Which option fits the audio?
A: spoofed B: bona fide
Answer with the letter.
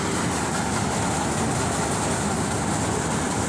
B